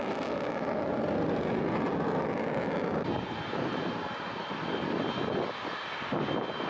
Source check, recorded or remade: recorded